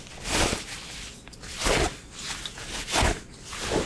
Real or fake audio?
real